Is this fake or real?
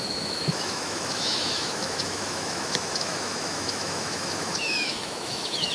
fake